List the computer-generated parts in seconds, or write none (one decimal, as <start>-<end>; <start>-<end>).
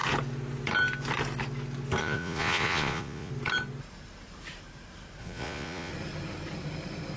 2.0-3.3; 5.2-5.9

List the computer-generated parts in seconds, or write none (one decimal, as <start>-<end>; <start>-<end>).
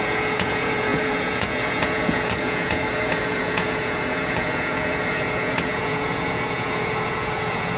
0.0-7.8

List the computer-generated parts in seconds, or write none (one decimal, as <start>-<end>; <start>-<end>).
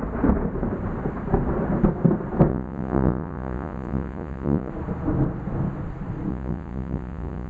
2.5-4.7; 6.3-7.5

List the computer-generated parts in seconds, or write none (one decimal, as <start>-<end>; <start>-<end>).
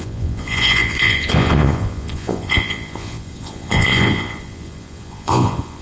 0.0-5.8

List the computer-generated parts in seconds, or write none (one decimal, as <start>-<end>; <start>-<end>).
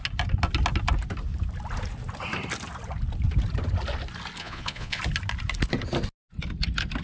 4.4-5.0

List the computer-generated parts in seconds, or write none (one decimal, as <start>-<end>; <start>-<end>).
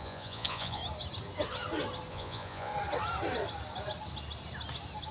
0.0-0.8; 2.1-2.7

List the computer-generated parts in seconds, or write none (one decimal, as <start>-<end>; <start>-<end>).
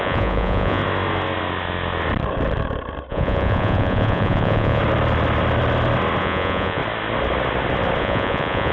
0.0-0.8; 3.1-4.8; 6.2-6.8; 8.0-8.7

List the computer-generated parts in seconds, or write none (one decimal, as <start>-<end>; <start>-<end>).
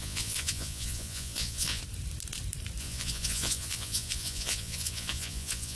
0.0-1.8; 2.8-5.8